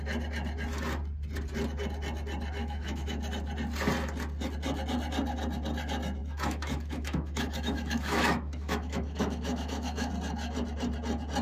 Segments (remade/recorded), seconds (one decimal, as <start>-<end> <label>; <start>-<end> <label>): 0.0-2.6 recorded; 2.6-3.2 remade; 3.2-6.2 recorded; 6.2-10.1 remade; 10.1-11.4 recorded